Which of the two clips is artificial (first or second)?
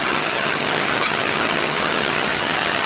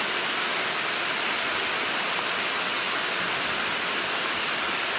first